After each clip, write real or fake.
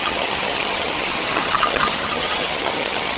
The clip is fake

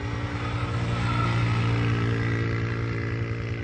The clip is real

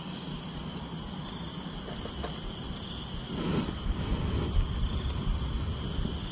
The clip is real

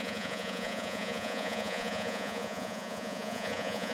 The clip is fake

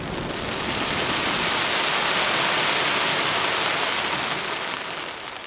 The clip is real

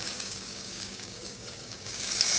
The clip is fake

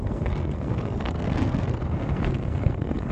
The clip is fake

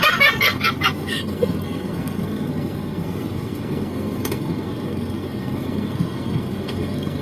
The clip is fake